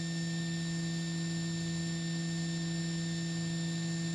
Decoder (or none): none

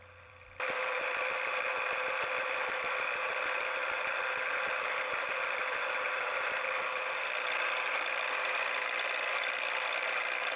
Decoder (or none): vocoder, BigVGAN v2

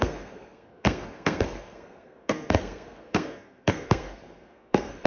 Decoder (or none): codec, SNAC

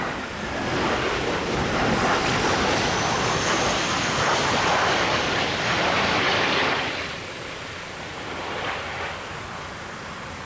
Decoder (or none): none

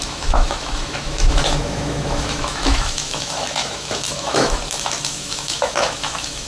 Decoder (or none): autoencoder, DAC-VAE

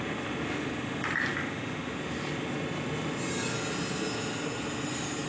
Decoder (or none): none